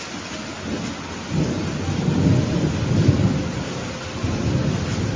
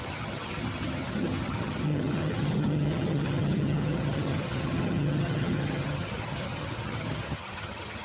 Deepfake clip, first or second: second